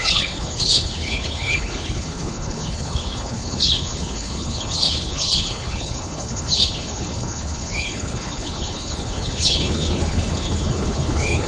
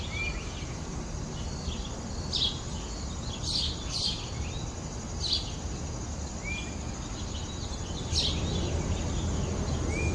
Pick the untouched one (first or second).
second